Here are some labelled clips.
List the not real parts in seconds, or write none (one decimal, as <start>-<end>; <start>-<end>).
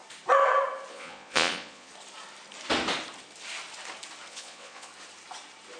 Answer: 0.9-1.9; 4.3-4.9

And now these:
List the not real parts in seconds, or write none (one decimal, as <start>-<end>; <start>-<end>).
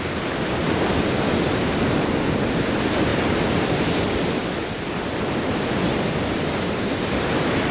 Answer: none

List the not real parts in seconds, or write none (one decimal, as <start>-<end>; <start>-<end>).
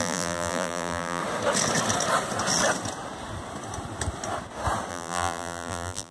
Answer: 0.0-1.2; 4.9-6.1